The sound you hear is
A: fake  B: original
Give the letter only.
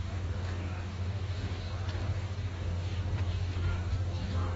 A